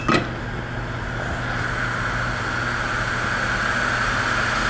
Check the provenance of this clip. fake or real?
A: real